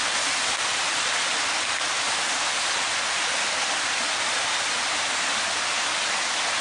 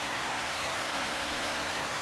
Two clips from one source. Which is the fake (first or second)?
second